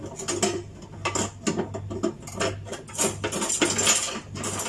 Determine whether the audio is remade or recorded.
recorded